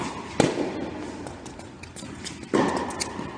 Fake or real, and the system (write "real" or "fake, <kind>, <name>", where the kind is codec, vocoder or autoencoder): real